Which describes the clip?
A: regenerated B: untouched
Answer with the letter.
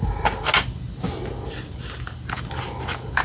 B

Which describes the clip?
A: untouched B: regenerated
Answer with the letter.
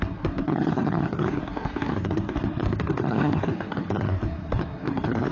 B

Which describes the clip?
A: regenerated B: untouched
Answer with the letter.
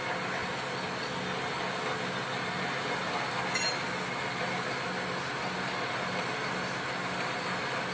B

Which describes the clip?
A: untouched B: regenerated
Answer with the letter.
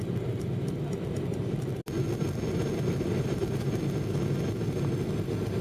A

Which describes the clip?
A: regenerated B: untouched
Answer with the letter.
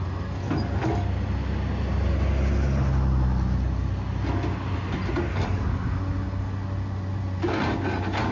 B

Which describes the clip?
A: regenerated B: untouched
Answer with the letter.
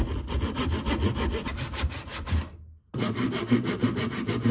B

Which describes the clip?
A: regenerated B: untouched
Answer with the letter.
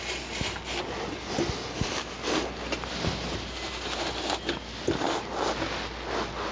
B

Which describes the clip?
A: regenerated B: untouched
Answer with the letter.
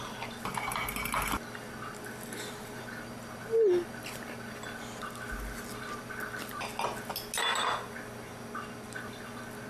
B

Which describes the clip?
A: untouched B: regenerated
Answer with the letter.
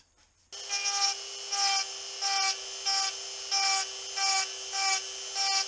A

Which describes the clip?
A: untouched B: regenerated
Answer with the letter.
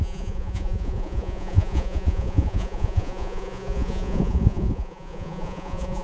B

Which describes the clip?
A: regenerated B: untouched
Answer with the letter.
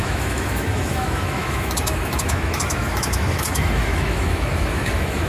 A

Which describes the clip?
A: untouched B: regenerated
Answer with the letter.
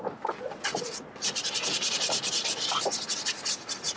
A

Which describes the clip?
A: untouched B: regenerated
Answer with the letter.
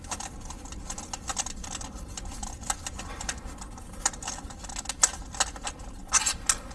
A